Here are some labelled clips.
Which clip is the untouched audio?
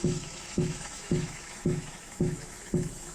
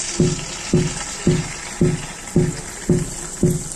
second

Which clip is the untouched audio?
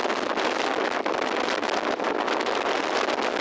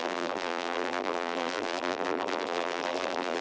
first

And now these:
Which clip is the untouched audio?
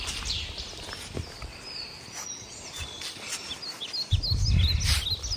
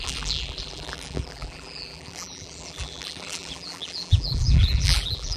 first